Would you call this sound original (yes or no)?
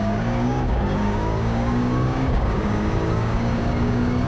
no